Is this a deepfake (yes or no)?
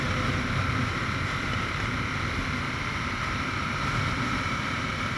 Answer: yes